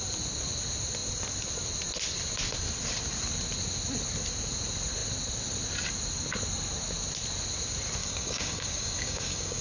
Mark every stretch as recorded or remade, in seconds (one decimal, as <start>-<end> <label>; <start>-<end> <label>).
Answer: 0.0-8.0 recorded; 8.0-9.6 remade

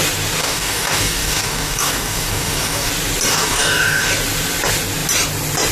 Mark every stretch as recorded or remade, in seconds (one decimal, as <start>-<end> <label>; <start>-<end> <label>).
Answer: 0.0-0.4 recorded; 0.4-2.9 remade; 2.9-3.3 recorded; 3.3-4.1 remade; 4.1-5.7 recorded

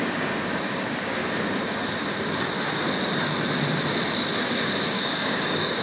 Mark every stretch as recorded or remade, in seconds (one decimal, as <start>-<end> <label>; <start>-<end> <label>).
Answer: 0.0-1.2 remade; 1.2-4.4 recorded; 4.4-5.8 remade

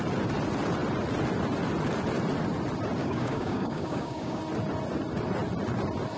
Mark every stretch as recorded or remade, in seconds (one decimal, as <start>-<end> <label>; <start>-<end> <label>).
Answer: 0.0-3.0 recorded; 3.0-4.4 remade; 4.4-6.2 recorded

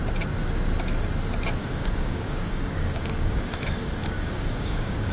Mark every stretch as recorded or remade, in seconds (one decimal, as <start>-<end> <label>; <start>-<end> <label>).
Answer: 0.0-1.6 recorded; 1.6-5.1 remade

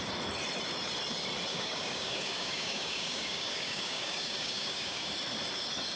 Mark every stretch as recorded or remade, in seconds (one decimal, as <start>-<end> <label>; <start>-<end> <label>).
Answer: 0.0-1.5 recorded; 1.5-5.1 remade; 5.1-6.0 recorded